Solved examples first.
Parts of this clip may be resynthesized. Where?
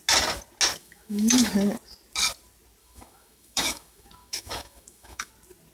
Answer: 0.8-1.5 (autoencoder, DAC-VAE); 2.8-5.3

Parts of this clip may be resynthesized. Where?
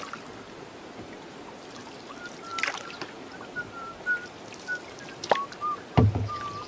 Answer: none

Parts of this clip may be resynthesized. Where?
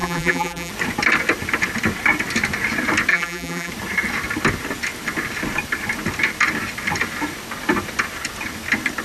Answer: 0.0-0.7 (vocoder, BigVGAN v2); 3.1-3.7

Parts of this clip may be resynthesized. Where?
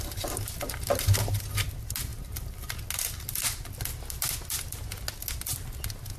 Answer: none